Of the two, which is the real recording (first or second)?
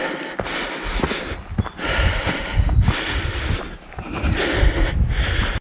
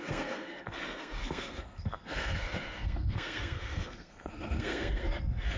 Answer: first